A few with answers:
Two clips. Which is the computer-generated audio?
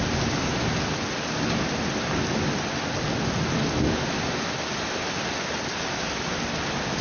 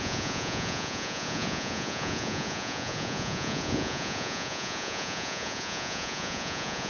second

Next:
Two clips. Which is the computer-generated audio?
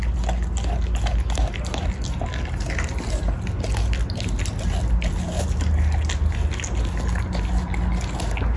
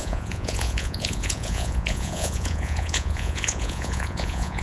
second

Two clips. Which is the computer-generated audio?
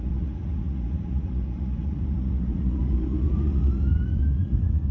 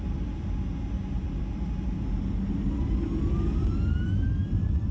first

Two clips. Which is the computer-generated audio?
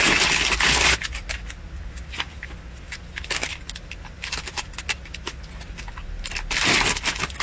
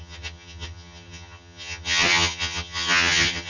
second